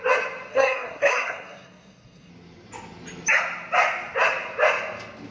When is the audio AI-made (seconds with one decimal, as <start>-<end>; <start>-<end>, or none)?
0.5-2.3